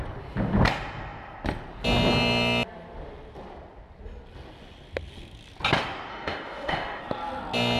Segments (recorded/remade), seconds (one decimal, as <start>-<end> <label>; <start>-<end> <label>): 0.0-6.1 recorded; 6.1-7.0 remade; 7.0-7.8 recorded